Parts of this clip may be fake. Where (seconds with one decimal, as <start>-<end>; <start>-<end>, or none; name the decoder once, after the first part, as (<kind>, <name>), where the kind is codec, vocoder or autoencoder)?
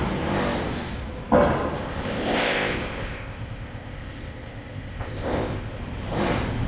1.8-5.8 (codec, ZipCodec)